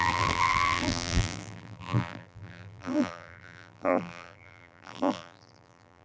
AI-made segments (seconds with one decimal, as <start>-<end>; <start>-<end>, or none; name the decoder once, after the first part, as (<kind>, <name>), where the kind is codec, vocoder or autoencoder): 0.0-6.0 (vocoder, BigVGAN v2)

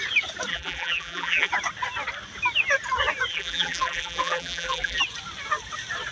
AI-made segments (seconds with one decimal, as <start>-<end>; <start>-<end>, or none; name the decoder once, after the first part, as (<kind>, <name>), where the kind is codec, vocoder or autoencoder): 0.5-1.5 (vocoder, BigVGAN v2); 3.3-5.0

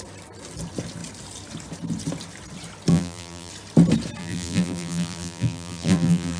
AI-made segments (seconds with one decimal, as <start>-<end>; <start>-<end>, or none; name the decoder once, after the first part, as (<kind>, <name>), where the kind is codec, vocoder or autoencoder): 2.9-3.5 (vocoder, BigVGAN v2); 4.2-6.4

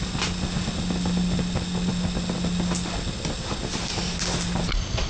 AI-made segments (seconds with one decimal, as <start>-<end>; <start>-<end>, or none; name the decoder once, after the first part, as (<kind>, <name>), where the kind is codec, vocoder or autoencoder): none

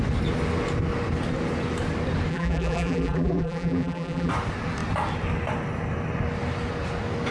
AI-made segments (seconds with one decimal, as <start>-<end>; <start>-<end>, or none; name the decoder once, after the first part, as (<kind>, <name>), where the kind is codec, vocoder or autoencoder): 2.3-4.3 (vocoder, BigVGAN v2)

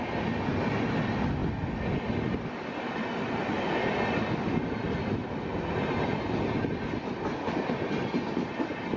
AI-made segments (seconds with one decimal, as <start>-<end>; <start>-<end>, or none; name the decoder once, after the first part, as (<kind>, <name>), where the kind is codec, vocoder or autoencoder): 1.4-2.8 (vocoder, BigVGAN v2)

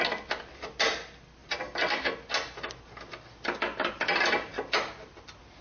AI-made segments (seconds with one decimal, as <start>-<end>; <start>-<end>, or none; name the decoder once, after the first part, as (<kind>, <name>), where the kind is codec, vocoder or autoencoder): none